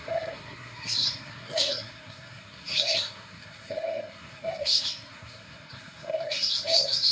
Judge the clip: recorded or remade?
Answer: remade